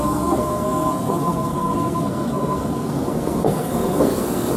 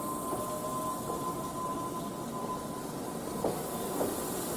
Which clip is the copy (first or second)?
first